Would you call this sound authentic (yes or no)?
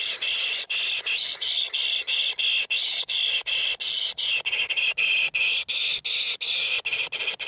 yes